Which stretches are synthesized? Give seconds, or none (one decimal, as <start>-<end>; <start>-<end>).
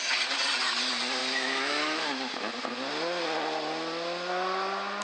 1.2-2.0